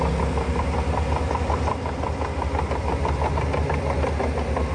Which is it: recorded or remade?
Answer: recorded